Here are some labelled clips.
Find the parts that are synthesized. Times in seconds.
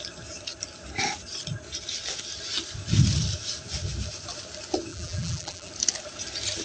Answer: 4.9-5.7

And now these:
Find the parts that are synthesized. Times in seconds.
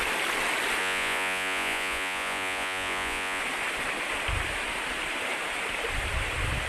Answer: 0.8-3.4